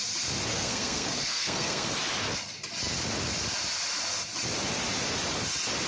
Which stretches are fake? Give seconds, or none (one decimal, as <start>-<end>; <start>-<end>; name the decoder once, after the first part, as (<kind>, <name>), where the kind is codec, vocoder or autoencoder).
0.5-1.9 (codec, SNAC)